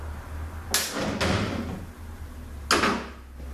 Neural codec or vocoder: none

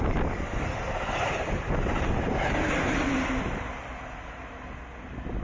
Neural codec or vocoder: none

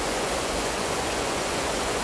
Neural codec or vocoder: vocoder, Vocos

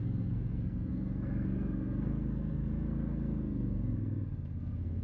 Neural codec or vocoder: codec, SNAC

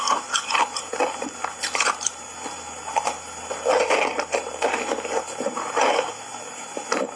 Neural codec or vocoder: none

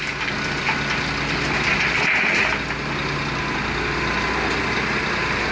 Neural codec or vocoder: none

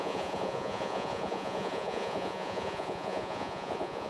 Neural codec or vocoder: vocoder, Vocos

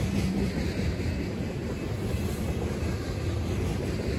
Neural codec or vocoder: none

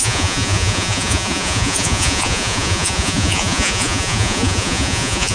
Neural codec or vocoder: vocoder, Vocos